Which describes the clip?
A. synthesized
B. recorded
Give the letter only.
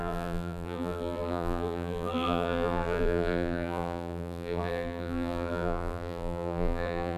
A